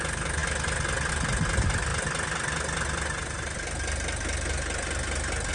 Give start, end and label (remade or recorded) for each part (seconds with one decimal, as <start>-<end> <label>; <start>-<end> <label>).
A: 0.0-5.5 recorded